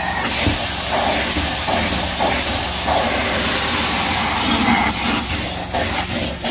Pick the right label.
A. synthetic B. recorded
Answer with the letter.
B